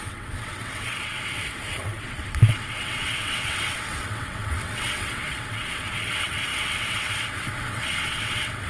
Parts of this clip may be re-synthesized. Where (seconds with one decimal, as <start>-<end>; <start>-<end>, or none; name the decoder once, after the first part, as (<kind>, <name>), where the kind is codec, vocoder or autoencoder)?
0.0-8.7 (vocoder, WaveNeXt)